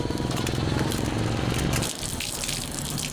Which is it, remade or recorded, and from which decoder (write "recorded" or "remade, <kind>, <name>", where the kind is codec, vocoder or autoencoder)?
recorded